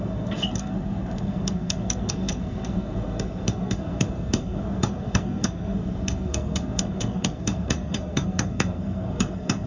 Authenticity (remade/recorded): remade